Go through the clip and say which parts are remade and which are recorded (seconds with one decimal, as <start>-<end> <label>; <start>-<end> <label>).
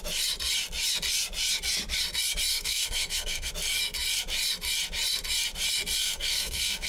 0.0-2.5 recorded; 2.5-3.5 remade; 3.5-6.0 recorded; 6.0-6.9 remade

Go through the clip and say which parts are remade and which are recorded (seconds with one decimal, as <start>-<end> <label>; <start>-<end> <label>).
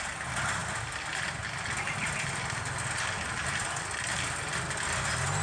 0.0-5.4 recorded